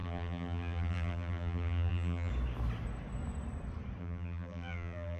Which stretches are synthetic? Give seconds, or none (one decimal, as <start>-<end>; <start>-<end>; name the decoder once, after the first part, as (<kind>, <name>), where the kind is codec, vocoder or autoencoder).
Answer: 0.0-2.3 (vocoder, BigVGAN v2); 4.0-5.2